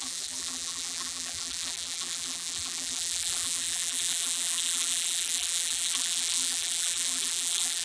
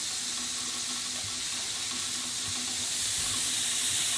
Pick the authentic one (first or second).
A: second